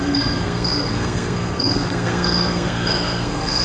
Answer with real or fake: fake